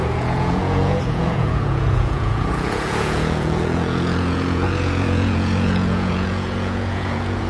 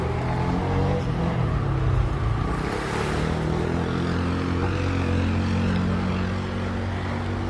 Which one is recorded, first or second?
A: second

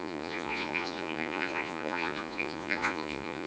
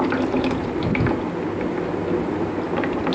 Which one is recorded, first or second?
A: second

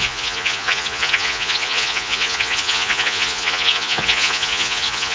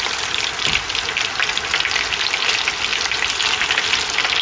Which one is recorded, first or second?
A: second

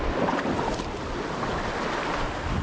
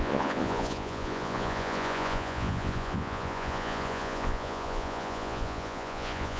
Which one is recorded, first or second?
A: first